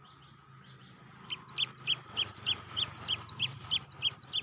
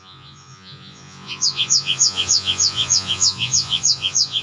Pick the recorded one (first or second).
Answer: first